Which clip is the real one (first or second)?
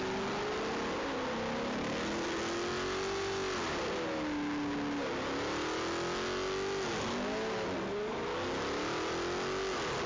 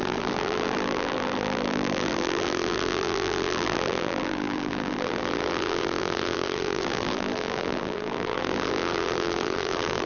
first